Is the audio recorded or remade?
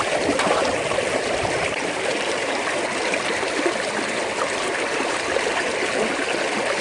recorded